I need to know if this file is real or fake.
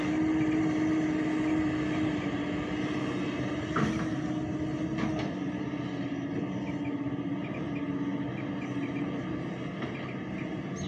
real